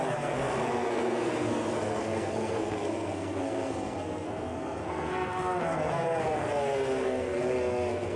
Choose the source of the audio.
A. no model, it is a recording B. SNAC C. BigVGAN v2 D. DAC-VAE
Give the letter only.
B